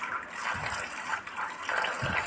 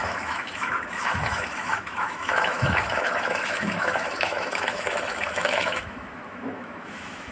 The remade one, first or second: second